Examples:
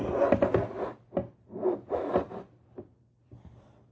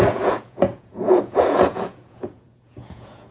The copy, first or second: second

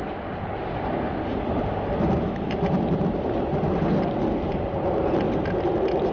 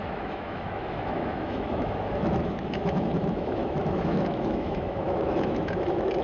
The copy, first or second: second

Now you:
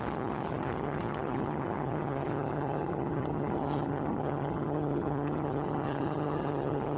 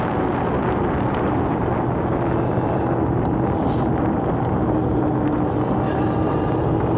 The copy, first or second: first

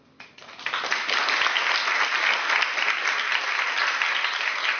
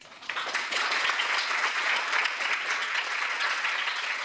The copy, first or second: second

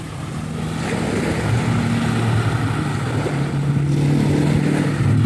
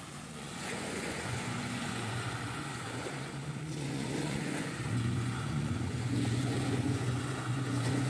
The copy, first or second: second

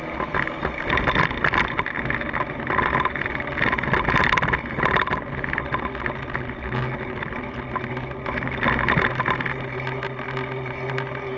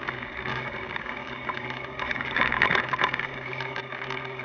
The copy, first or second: second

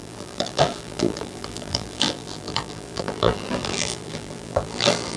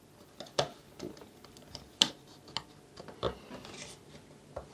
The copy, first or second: first